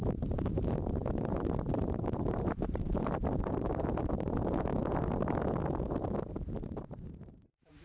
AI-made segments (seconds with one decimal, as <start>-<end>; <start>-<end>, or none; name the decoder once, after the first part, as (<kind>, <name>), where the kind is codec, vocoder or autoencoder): 0.0-4.7 (vocoder, BigVGAN v2); 6.3-7.8